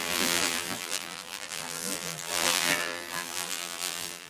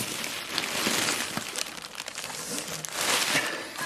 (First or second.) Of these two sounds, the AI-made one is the first